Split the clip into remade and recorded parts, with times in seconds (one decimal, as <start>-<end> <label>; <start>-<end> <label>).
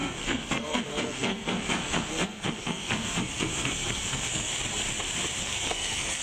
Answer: 0.0-4.5 remade; 4.5-5.4 recorded; 5.4-6.2 remade